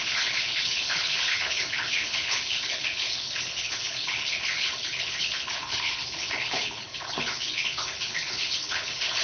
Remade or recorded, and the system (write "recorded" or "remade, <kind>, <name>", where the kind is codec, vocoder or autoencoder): remade, codec, HILCodec